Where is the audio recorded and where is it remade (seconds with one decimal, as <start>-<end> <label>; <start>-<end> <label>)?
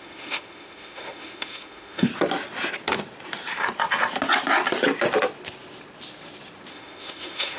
0.0-2.1 remade; 2.1-6.7 recorded; 6.7-7.6 remade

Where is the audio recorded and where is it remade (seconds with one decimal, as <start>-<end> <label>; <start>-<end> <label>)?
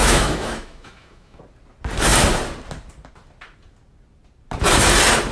0.0-1.4 remade; 1.4-5.3 recorded